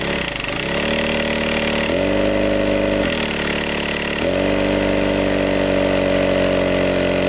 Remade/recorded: recorded